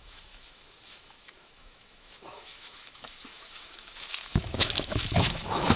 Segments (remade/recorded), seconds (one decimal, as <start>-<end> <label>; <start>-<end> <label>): 0.0-5.8 remade